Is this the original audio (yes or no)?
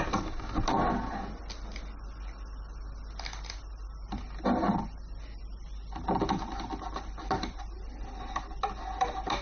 yes